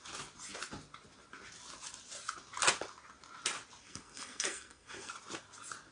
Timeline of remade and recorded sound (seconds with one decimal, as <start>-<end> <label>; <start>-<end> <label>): 0.0-3.8 recorded; 3.8-5.1 remade; 5.1-5.9 recorded